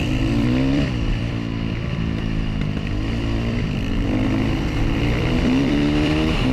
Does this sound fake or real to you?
fake